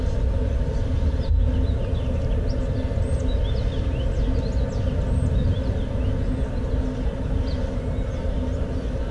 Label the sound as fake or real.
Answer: real